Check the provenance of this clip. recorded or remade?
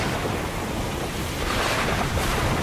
recorded